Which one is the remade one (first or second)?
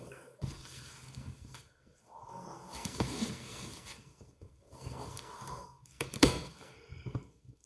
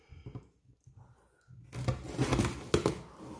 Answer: first